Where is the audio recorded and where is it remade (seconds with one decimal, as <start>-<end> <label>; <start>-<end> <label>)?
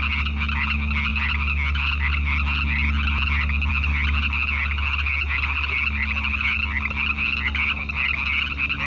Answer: 0.0-8.9 recorded